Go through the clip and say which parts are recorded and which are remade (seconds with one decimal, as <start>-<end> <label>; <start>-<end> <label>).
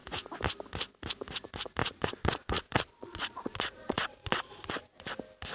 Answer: 0.0-1.8 recorded; 1.8-5.1 remade; 5.1-5.5 recorded